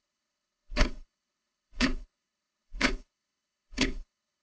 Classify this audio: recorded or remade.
remade